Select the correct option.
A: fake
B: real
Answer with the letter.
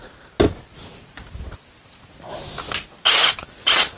B